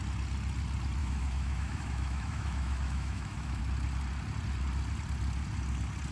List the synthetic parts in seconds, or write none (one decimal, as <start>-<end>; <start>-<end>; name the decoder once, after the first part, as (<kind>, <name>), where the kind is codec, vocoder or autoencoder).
1.0-3.6 (autoencoder, DAC-VAE)